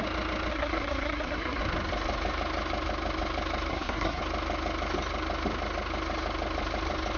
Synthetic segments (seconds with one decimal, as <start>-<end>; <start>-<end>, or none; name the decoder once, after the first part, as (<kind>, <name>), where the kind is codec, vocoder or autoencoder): 0.5-1.6 (codec, SNAC); 3.7-4.2